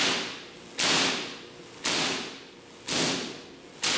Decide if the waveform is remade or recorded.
recorded